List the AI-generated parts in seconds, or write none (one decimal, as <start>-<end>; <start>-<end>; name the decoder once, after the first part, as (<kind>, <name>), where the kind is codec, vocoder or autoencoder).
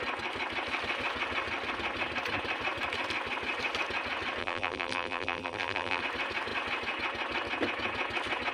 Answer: 4.4-6.0 (vocoder, BigVGAN v2)